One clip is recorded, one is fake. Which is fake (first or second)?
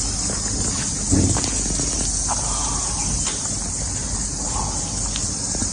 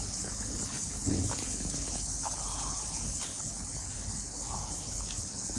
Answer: second